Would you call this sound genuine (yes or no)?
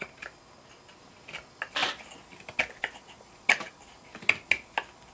yes